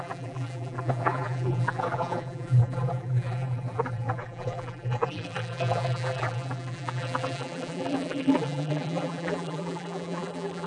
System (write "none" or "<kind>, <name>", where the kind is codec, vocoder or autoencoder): vocoder, BigVGAN v2